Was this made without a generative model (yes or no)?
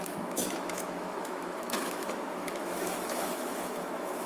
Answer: no